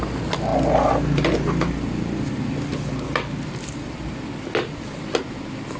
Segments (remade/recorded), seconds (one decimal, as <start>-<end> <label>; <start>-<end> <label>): 0.0-5.8 recorded